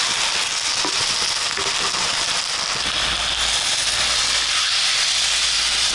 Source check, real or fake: real